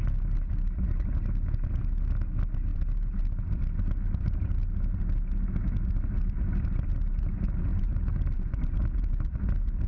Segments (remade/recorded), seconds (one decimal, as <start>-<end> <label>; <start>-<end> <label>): 0.0-7.7 recorded; 7.7-9.1 remade; 9.1-9.9 recorded